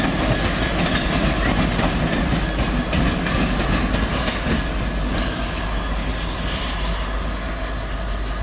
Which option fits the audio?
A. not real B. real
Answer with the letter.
B